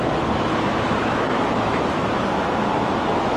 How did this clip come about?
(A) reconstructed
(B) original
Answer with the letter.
A